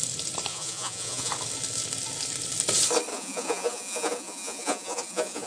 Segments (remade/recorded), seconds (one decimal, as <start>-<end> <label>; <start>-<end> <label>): 0.0-0.5 recorded; 0.5-1.3 remade; 1.3-3.1 recorded; 3.1-5.5 remade

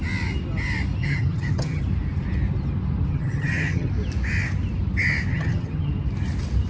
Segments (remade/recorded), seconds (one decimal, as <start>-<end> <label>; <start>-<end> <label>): 0.0-1.0 recorded; 1.0-1.8 remade; 1.8-3.1 recorded; 3.1-3.9 remade; 3.9-5.3 recorded; 5.3-5.9 remade; 5.9-6.7 recorded

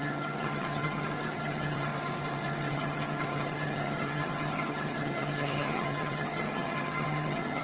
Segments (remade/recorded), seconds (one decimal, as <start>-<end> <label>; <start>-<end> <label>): 0.0-1.9 remade; 1.9-2.7 recorded; 2.7-7.6 remade

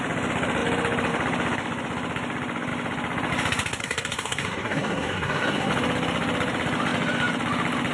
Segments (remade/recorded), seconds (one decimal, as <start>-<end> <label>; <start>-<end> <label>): 0.0-3.8 recorded; 3.8-5.7 remade; 5.7-7.9 recorded

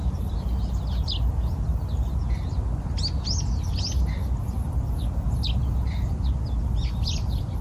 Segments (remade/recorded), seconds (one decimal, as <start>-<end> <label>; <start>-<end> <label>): 0.0-0.7 remade; 0.7-7.6 recorded

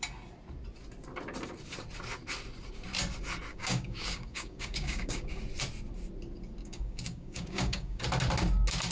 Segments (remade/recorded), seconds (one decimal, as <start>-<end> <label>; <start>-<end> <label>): 0.0-3.5 recorded; 3.5-5.4 remade; 5.4-6.6 recorded; 6.6-8.0 remade; 8.0-8.9 recorded

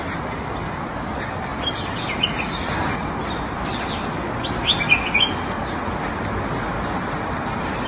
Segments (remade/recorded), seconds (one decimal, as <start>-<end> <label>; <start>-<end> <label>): 0.0-7.9 recorded

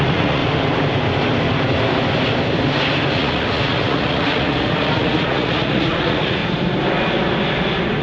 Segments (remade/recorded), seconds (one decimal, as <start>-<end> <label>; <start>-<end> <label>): 0.0-0.4 remade; 0.4-3.1 recorded; 3.1-6.4 remade; 6.4-8.0 recorded